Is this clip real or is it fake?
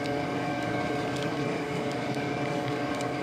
fake